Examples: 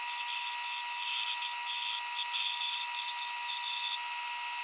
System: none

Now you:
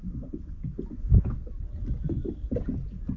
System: none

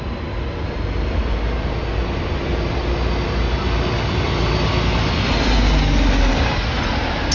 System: none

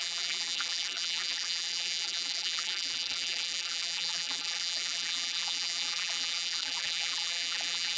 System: vocoder, BigVGAN v2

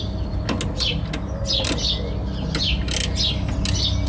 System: none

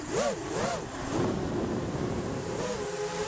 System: vocoder, BigVGAN v2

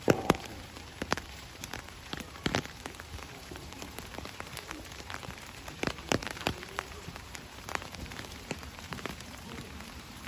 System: vocoder, BigVGAN v2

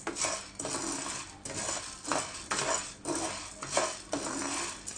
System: none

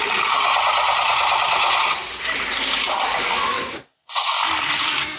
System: none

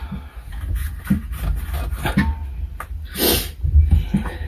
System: none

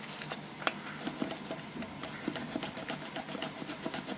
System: none